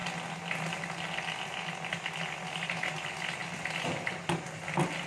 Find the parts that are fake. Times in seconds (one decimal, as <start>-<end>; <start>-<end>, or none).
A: none